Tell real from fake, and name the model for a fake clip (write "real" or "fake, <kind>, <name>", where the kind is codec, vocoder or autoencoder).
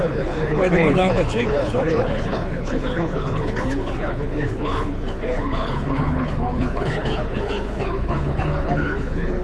fake, codec, HILCodec